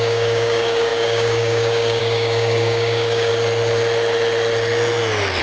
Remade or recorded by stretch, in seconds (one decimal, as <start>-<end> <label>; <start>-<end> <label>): 0.0-3.3 remade; 3.3-5.4 recorded